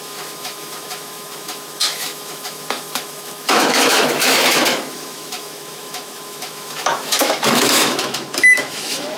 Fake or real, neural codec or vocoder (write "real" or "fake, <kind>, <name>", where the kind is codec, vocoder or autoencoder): fake, autoencoder, DAC-VAE